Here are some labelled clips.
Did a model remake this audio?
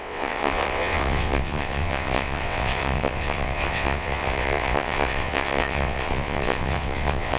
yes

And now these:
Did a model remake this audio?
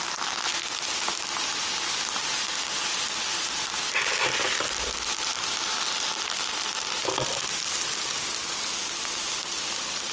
no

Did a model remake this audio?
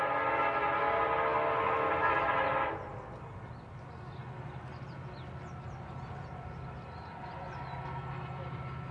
no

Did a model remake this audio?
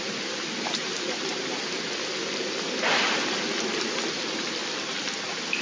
no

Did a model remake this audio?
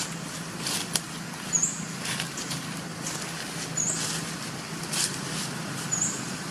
no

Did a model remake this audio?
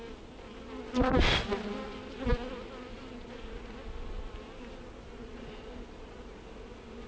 no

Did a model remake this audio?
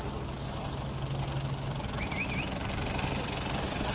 no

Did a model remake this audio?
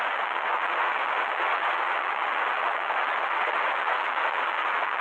yes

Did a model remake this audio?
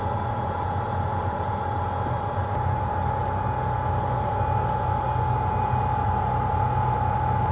no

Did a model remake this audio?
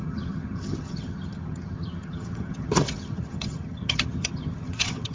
yes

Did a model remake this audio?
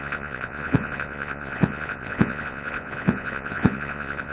yes